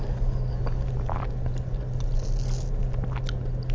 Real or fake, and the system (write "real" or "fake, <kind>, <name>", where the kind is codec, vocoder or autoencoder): real